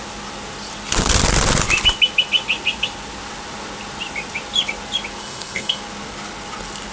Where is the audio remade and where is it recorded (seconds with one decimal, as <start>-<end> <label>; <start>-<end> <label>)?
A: 0.0-5.2 recorded; 5.2-5.8 remade; 5.8-6.9 recorded